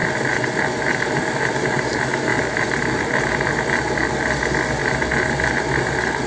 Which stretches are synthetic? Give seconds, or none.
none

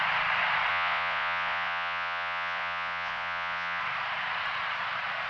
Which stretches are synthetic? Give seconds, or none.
0.7-3.8 (vocoder, Vocos)

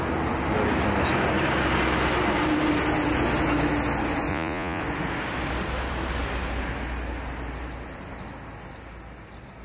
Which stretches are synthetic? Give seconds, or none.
4.3-4.8 (vocoder, Vocos)

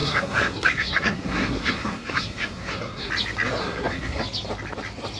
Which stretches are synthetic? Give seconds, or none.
0.0-3.1 (codec, SNAC); 3.6-4.2

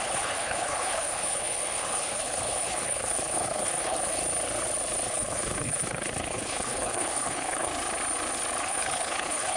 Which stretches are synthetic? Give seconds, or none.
0.0-4.2 (codec, HILCodec); 5.1-7.7; 8.6-9.6